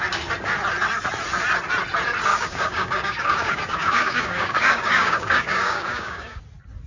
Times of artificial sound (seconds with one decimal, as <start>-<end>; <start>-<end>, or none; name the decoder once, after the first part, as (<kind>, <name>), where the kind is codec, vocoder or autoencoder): 2.3-6.4 (codec, DAC)